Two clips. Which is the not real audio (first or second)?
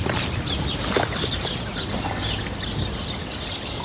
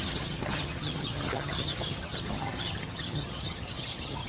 second